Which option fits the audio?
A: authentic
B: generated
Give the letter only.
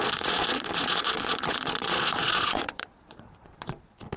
B